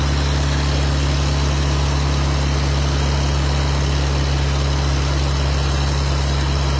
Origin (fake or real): real